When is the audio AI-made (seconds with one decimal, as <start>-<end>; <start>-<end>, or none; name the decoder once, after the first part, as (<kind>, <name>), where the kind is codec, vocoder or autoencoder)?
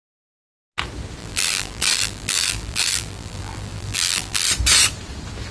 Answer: 1.2-4.5 (vocoder, BigVGAN v2)